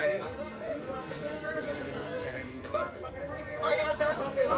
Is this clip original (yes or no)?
no